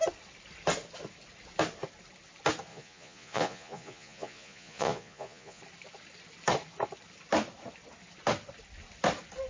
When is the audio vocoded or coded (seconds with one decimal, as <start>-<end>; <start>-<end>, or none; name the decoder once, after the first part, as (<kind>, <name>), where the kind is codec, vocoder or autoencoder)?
2.7-5.6 (vocoder, Vocos)